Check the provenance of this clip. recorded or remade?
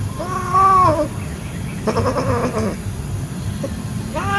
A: recorded